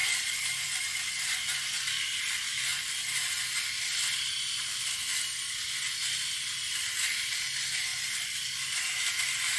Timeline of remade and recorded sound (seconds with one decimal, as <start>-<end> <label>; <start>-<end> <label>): 0.0-1.1 remade; 1.1-7.9 recorded; 7.9-9.6 remade